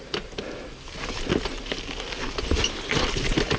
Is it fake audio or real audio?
real